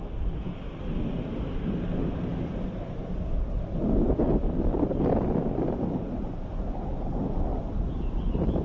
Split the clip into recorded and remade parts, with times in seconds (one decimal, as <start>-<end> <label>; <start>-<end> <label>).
0.0-2.3 recorded; 2.3-4.2 remade; 4.2-7.5 recorded; 7.5-8.6 remade